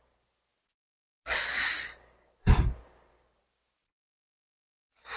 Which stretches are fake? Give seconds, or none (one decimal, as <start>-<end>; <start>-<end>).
none